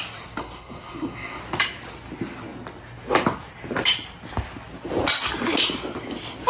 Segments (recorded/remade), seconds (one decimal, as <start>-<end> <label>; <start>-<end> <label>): 0.0-0.4 recorded; 0.4-1.4 remade; 1.4-6.5 recorded